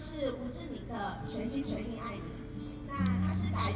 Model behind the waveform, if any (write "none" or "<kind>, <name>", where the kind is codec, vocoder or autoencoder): none